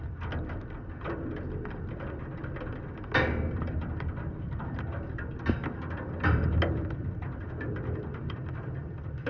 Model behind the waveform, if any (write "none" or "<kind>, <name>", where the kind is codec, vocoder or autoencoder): none